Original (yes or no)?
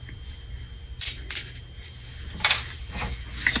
yes